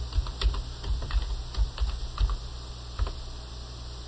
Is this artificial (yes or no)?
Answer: no